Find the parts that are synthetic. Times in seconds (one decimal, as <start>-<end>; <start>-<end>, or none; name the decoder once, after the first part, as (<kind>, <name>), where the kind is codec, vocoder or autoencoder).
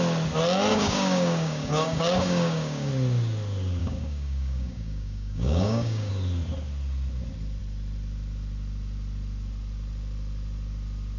0.7-2.9 (codec, DAC); 3.8-6.1